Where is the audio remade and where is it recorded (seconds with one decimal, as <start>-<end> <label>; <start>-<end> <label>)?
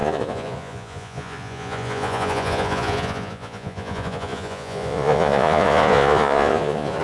0.0-7.0 remade